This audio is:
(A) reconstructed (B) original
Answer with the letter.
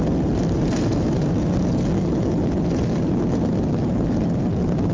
B